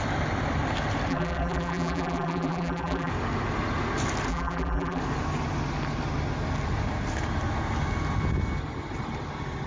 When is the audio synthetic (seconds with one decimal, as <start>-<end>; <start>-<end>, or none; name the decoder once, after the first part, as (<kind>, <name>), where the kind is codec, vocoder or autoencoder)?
1.1-3.1 (vocoder, BigVGAN v2); 4.3-5.0